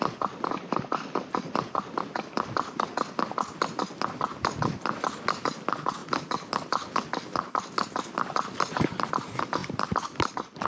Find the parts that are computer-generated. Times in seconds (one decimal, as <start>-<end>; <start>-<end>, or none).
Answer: none